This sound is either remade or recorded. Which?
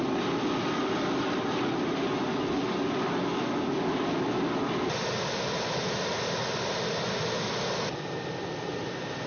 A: recorded